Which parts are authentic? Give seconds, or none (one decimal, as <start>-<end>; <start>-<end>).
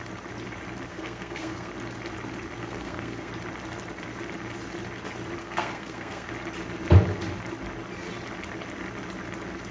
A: 0.0-0.9; 1.7-2.6; 3.3-5.4; 6.3-9.7